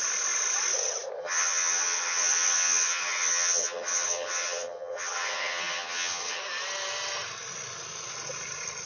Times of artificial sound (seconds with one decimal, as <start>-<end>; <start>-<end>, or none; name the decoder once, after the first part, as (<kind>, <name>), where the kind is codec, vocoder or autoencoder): 1.2-6.4 (vocoder, HiFi-GAN)

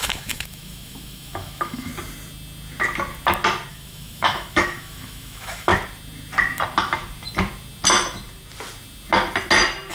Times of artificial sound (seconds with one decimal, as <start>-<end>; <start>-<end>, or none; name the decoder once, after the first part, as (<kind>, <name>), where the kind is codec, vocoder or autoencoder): 0.0-1.9 (autoencoder, DAC-VAE); 3.7-5.7

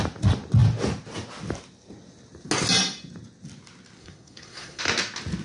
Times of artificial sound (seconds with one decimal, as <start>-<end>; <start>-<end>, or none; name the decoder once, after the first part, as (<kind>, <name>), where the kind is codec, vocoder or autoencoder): 4.0-4.8 (codec, SNAC)

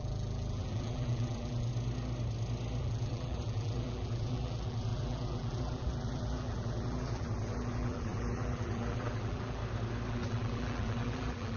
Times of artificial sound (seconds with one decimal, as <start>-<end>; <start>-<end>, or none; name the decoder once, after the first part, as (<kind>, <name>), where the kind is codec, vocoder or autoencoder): 0.0-1.7 (vocoder, BigVGAN v2); 2.8-9.6; 10.1-11.6

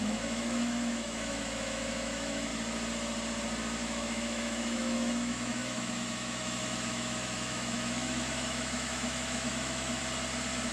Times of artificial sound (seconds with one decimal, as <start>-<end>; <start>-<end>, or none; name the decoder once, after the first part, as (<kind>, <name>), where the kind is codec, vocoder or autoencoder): 0.0-2.5 (autoencoder, DAC-VAE); 3.8-10.0